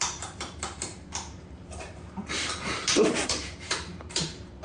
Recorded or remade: remade